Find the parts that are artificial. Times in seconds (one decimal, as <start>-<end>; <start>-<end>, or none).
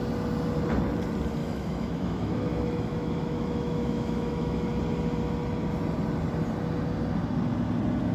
1.4-4.8